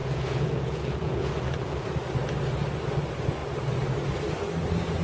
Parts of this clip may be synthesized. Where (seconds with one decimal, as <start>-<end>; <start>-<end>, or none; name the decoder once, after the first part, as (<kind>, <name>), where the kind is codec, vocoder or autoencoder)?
0.0-1.3 (vocoder, Vocos)